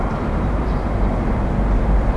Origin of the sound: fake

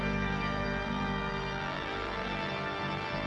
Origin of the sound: fake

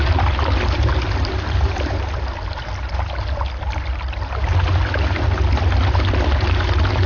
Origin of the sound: real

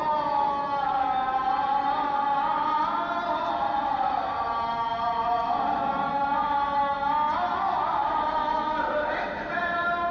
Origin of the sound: real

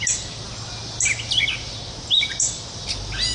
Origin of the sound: real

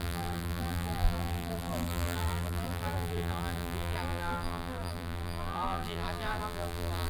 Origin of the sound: fake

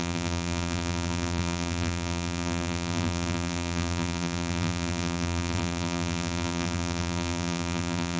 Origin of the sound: fake